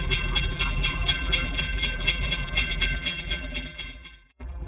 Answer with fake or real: fake